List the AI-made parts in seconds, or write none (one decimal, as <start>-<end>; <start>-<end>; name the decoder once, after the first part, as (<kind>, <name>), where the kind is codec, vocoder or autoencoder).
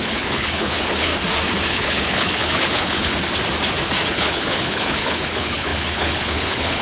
0.0-1.1 (codec, HILCodec); 1.7-3.1; 4.1-6.8